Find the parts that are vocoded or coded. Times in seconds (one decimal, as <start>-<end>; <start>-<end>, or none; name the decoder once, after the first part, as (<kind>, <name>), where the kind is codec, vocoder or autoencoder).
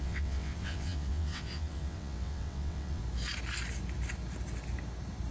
0.0-3.0 (vocoder, WaveNeXt)